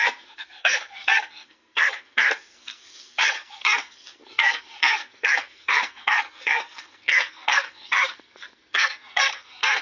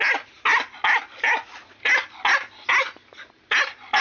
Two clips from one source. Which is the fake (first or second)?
first